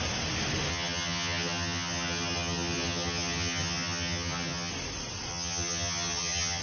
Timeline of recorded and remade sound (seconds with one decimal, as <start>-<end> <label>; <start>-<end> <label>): 0.0-0.7 recorded; 0.7-4.7 remade; 4.7-5.3 recorded; 5.3-6.6 remade